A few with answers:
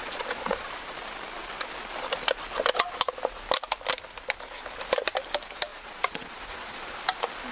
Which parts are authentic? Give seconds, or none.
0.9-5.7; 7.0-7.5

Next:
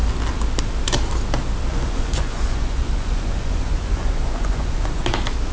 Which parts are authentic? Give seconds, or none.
0.0-1.7; 5.0-5.5

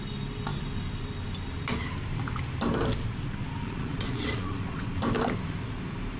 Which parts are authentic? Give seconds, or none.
0.0-3.6; 5.0-6.2

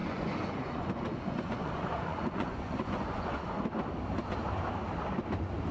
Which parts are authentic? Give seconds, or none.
3.4-5.7

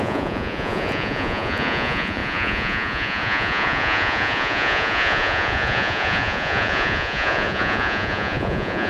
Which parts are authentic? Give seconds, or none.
none

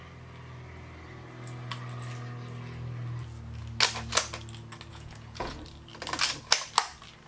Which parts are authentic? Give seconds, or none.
0.0-4.9; 5.5-7.3

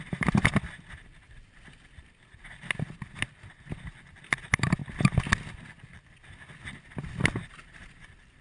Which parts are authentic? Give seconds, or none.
0.0-8.4

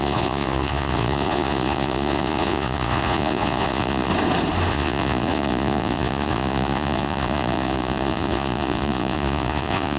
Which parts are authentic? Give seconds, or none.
4.1-4.7